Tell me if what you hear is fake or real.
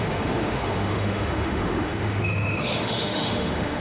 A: fake